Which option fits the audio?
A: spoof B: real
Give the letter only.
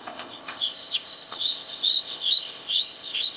A